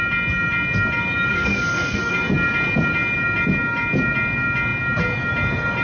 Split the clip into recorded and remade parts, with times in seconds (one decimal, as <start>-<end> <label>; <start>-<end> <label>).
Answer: 0.0-1.3 recorded; 1.3-2.1 remade; 2.1-5.8 recorded